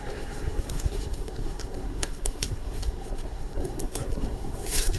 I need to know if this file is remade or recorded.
remade